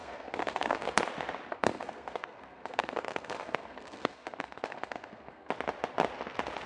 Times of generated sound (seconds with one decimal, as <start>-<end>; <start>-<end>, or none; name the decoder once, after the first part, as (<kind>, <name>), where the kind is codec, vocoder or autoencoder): 0.0-1.0 (codec, SNAC); 1.5-5.5